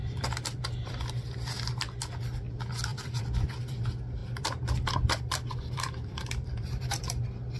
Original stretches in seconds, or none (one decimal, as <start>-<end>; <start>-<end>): 1.1-2.9; 3.8-4.2; 7.0-7.6